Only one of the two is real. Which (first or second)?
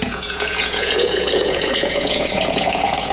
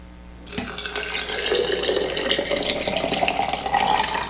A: second